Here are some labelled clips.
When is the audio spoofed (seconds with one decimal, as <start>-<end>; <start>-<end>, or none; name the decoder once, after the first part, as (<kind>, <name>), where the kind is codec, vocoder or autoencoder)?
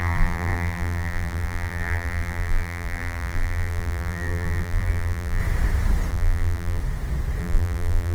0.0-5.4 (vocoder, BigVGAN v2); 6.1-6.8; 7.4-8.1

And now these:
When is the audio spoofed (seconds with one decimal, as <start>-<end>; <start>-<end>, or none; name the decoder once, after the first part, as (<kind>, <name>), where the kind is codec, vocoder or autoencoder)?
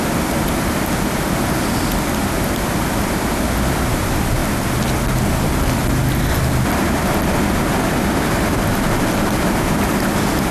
none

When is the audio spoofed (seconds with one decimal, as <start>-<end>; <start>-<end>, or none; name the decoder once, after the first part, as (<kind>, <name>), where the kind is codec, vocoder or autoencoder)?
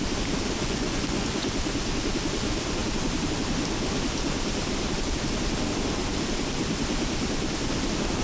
0.6-1.5 (vocoder, Vocos)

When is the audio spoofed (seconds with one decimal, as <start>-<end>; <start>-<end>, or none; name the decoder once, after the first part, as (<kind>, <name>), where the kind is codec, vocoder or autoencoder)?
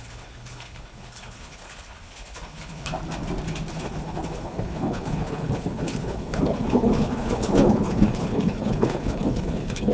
0.0-2.9 (codec, HILCodec); 3.7-9.9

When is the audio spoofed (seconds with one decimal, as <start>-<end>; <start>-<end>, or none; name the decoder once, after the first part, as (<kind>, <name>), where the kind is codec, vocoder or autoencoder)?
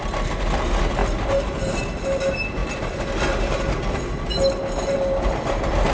none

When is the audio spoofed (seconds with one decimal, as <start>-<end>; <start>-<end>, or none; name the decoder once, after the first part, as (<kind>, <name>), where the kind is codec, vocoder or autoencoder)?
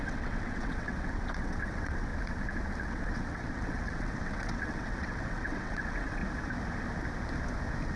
0.0-2.1 (vocoder, WaveNeXt); 2.8-6.2